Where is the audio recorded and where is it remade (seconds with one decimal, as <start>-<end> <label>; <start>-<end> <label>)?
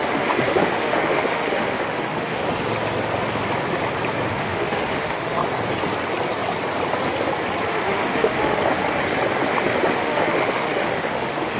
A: 0.0-2.4 remade; 2.4-4.3 recorded; 4.3-5.4 remade; 5.4-7.7 recorded; 7.7-8.6 remade; 8.6-9.9 recorded; 9.9-11.6 remade